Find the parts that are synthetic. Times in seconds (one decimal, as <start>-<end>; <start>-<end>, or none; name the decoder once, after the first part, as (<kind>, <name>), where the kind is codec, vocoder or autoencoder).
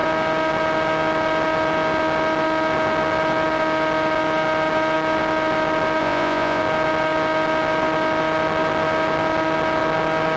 6.0-6.6 (vocoder, Vocos)